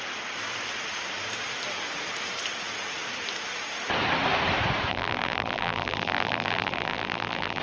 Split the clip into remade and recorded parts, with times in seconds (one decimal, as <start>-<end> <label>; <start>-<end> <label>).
0.0-4.9 recorded; 4.9-7.6 remade